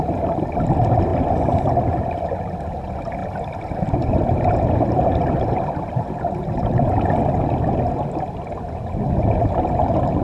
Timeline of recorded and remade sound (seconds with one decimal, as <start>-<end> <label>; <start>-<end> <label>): 0.0-3.2 recorded; 3.2-7.2 remade; 7.2-10.2 recorded

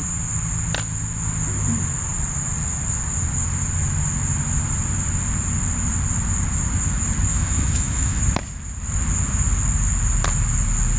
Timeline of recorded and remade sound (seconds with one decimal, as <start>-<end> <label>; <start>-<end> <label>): 0.0-7.3 recorded; 7.3-8.2 remade; 8.2-11.0 recorded